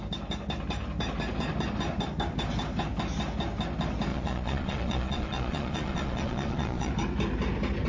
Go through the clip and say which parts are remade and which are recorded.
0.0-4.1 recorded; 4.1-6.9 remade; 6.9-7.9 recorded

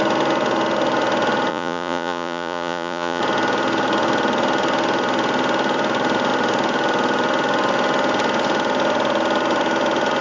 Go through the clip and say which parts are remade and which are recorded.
0.0-1.5 recorded; 1.5-3.2 remade; 3.2-10.2 recorded

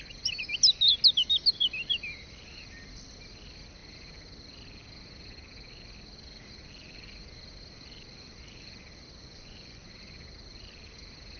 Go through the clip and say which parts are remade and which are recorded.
0.0-9.2 recorded; 9.2-9.8 remade; 9.8-11.4 recorded

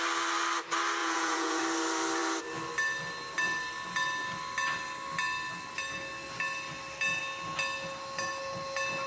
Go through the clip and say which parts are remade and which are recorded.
0.0-1.0 recorded; 1.0-1.6 remade; 1.6-9.1 recorded

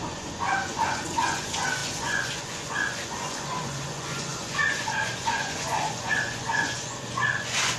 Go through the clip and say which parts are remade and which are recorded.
0.0-7.8 remade

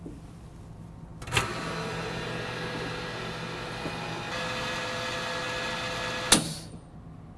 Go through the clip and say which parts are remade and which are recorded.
0.0-7.4 recorded

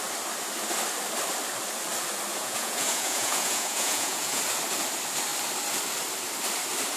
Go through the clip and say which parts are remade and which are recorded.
0.0-2.3 recorded; 2.3-4.4 remade; 4.4-7.0 recorded